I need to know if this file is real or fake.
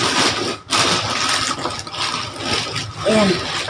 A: real